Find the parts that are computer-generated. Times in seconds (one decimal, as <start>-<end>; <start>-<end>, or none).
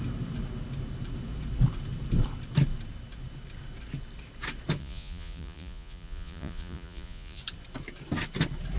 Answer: 4.8-7.4